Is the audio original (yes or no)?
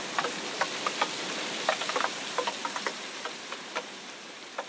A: yes